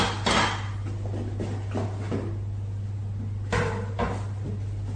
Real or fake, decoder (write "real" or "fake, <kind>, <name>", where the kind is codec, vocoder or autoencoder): real